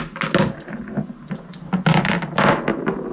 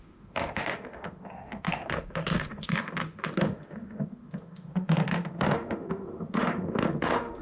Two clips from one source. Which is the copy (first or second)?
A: second